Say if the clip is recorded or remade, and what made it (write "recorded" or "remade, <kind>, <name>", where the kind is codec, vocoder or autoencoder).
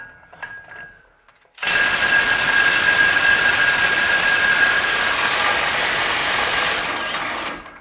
recorded